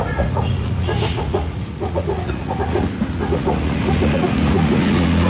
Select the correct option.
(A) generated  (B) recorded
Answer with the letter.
A